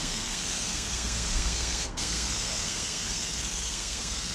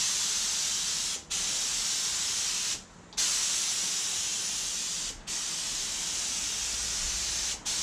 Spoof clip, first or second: first